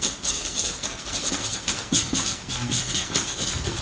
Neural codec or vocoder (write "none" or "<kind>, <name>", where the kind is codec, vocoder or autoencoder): codec, SNAC